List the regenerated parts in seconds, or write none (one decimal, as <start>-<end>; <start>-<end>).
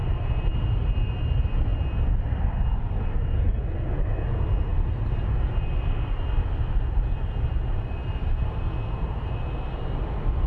none